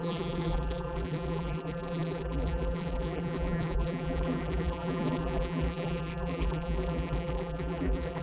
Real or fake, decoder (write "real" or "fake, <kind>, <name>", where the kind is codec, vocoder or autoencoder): fake, vocoder, BigVGAN v2